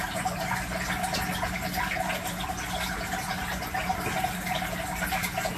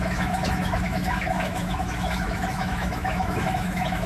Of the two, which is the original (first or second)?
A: first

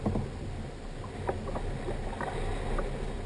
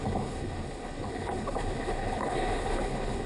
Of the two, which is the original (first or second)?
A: first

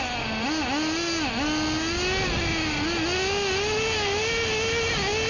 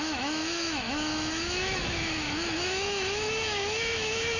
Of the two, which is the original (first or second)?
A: first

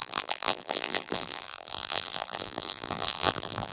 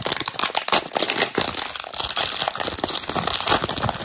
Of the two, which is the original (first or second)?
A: second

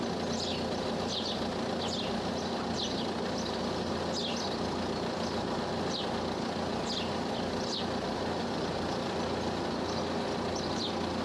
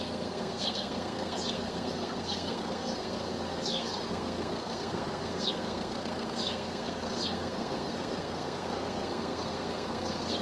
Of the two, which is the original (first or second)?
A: first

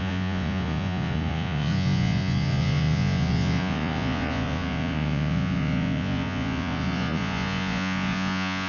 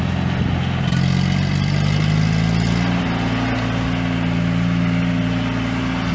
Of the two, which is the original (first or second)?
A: second